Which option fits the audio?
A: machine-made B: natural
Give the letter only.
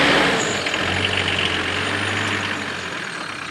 B